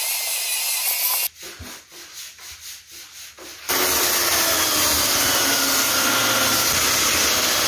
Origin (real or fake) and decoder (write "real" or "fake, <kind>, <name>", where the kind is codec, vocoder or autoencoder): real